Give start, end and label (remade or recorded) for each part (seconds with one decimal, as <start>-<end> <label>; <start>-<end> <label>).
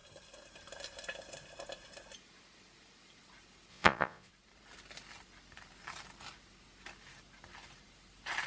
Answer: 0.0-3.7 recorded; 3.7-4.3 remade; 4.3-8.5 recorded